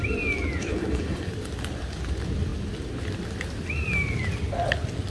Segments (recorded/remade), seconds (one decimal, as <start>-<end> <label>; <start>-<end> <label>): 0.0-0.6 recorded; 0.6-1.3 remade; 1.3-5.1 recorded